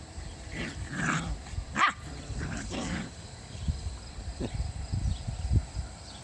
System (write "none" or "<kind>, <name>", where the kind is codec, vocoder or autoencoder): vocoder, BigVGAN v2